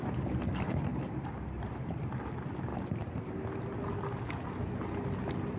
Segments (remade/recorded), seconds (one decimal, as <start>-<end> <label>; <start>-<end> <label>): 0.0-5.6 recorded